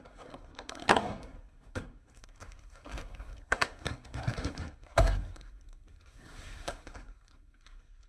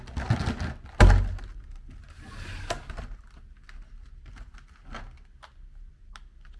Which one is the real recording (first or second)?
second